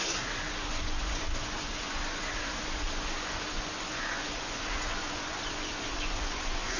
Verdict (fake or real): fake